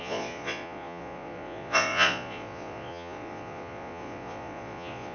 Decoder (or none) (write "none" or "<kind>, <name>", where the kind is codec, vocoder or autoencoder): vocoder, Vocos